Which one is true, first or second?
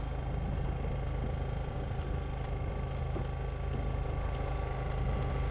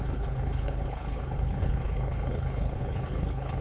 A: first